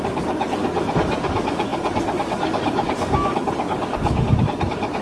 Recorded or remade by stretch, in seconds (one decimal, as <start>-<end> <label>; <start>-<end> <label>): 0.0-5.0 remade